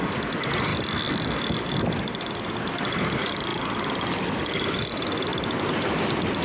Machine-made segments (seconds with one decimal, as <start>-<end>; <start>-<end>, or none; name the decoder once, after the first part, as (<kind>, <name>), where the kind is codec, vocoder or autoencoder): none